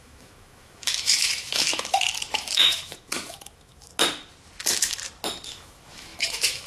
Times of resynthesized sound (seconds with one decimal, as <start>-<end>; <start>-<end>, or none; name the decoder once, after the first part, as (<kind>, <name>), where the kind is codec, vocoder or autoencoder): 0.0-3.9 (autoencoder, DAC-VAE); 4.6-5.0; 5.5-6.7